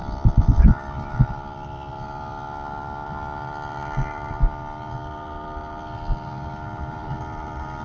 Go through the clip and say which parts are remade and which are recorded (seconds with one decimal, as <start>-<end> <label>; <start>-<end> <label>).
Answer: 0.0-7.8 recorded